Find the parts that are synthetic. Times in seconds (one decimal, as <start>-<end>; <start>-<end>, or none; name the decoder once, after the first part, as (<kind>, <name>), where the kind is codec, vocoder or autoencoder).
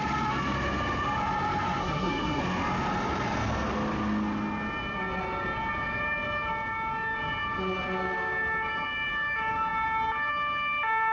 1.8-2.4 (codec, SNAC)